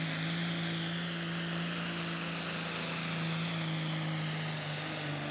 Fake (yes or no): no